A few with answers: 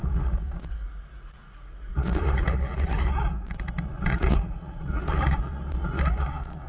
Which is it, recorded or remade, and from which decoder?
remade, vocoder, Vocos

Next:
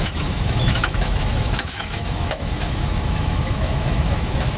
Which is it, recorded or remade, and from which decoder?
remade, autoencoder, DAC-VAE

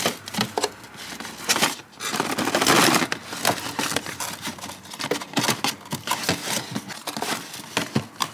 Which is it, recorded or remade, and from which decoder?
recorded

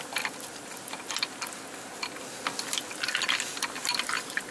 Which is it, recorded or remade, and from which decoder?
recorded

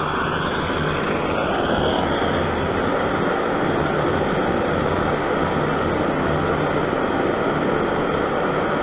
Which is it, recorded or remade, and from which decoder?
recorded